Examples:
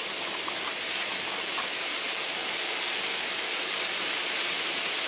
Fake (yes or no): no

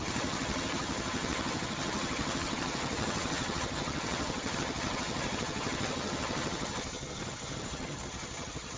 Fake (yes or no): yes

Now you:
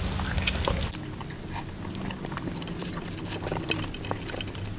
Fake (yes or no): no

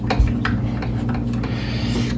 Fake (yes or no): no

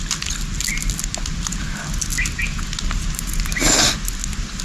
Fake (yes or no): no